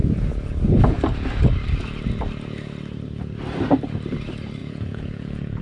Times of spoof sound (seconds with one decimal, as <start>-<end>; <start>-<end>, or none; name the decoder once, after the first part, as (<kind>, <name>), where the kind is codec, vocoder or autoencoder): 4.6-5.6 (vocoder, Vocos)